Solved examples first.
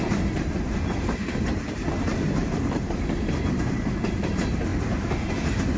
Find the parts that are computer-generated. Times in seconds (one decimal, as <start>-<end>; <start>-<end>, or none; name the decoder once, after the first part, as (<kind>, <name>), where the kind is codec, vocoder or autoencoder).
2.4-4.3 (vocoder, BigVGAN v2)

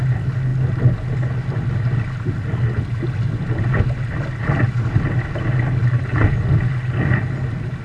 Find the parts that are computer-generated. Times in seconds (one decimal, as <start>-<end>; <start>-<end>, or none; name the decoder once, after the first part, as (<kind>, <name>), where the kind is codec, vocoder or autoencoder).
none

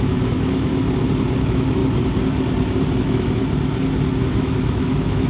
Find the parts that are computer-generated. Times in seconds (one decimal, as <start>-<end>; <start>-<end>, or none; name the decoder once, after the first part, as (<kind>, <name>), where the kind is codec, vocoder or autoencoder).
0.0-0.7 (autoencoder, DAC-VAE); 1.4-1.8; 3.0-3.4; 4.2-5.3